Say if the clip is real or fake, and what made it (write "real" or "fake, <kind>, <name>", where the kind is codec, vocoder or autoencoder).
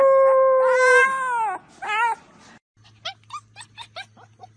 real